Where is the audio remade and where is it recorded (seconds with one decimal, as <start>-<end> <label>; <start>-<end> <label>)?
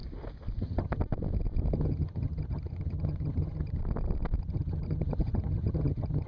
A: 0.0-0.6 recorded; 0.6-1.0 remade; 1.0-1.7 recorded; 1.7-3.8 remade; 3.8-4.4 recorded; 4.4-6.3 remade